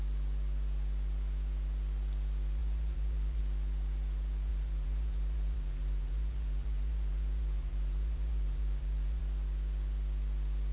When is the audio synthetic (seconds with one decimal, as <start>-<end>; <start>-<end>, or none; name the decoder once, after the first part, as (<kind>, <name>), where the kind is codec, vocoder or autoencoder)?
2.6-3.4 (vocoder, BigVGAN v2); 4.5-9.2

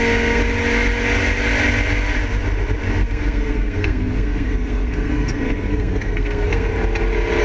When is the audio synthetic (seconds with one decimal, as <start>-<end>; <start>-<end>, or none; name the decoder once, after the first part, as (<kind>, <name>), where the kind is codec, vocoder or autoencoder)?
0.0-0.4 (codec, SNAC); 2.9-6.7

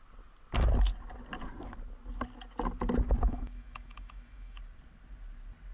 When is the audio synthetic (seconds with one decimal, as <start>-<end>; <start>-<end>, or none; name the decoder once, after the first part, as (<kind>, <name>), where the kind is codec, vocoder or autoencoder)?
3.3-4.6 (autoencoder, DAC-VAE)

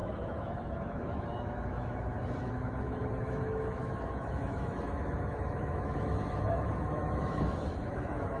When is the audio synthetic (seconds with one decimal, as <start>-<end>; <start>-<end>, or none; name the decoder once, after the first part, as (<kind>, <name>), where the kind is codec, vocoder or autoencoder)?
0.0-8.4 (autoencoder, DAC-VAE)

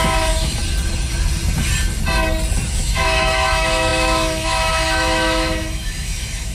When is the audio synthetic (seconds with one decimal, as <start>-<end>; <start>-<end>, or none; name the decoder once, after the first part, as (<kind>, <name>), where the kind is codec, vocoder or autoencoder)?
0.0-0.6 (autoencoder, DAC-VAE); 2.7-6.5

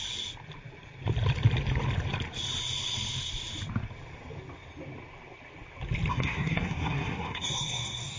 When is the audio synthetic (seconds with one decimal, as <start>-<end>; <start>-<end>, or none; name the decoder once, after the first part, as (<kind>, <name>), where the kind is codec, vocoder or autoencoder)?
6.1-8.2 (codec, SNAC)

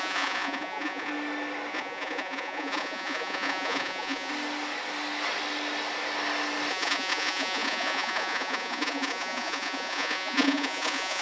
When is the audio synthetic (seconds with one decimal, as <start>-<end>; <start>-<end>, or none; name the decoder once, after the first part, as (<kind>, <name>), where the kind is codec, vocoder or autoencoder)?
0.0-1.1 (vocoder, Vocos); 1.7-4.3; 6.7-11.2